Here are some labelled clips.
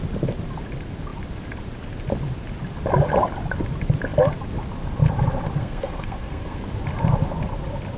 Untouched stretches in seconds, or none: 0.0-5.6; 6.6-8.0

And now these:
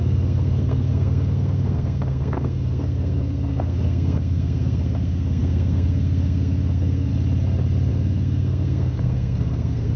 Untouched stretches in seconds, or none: 7.1-7.9

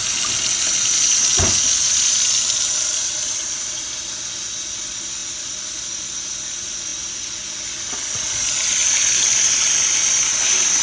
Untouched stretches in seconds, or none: 0.0-10.8

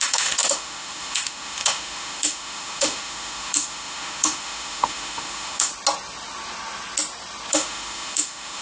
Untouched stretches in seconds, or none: 5.7-7.5

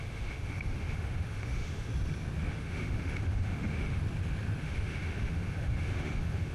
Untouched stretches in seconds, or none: 1.9-2.5; 4.0-4.6

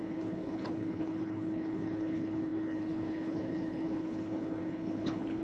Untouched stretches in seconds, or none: none

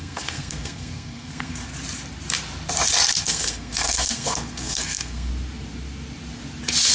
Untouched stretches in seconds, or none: 1.7-3.2; 5.3-6.9